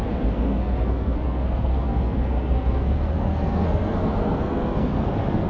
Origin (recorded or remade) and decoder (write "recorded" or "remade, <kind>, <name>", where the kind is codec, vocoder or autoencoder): remade, codec, SNAC